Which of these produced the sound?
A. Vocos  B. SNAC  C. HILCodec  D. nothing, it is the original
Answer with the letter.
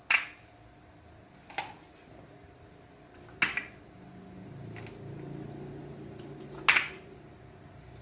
D